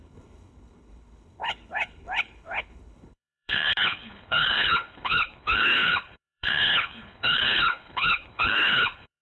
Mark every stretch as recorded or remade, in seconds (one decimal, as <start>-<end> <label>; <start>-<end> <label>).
0.0-9.2 remade